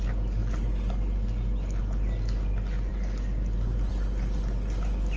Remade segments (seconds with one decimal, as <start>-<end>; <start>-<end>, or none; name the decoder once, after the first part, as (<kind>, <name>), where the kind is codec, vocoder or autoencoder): none